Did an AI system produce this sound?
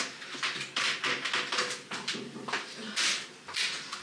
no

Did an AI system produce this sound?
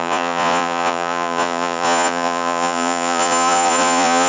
yes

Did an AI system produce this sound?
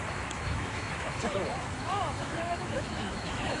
yes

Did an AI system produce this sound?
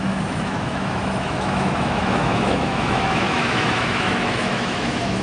yes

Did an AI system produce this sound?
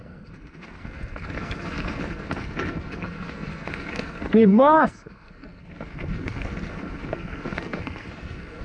yes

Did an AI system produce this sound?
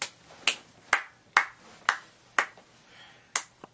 no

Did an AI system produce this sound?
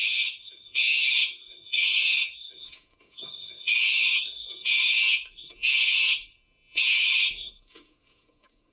yes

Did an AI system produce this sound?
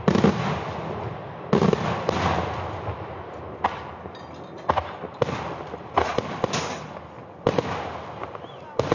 no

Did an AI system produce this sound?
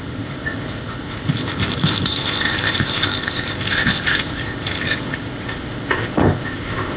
yes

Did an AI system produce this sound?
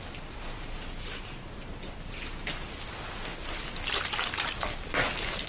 no